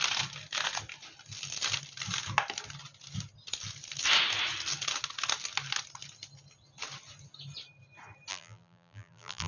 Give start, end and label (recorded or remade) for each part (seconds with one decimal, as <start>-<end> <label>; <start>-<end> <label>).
0.0-8.3 recorded; 8.3-9.5 remade